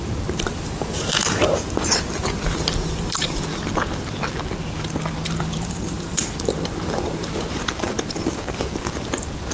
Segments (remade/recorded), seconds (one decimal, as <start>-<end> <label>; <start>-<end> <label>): 0.0-3.5 remade; 3.5-5.4 recorded; 5.4-9.5 remade